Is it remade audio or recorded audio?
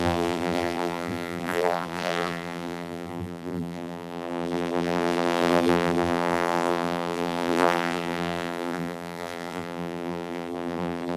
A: remade